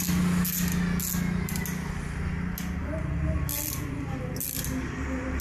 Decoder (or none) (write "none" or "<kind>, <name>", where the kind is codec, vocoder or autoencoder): none